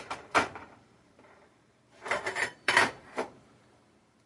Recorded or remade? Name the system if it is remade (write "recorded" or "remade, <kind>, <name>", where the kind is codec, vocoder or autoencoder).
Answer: remade, vocoder, BigVGAN v2